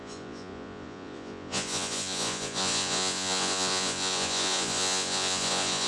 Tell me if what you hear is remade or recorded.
remade